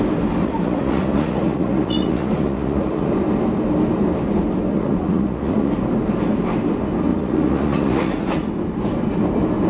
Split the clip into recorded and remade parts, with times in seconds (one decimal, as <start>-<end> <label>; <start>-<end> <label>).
0.0-0.4 recorded; 0.4-3.1 remade; 3.1-4.7 recorded; 4.7-5.7 remade; 5.7-7.1 recorded; 7.1-8.5 remade; 8.5-9.7 recorded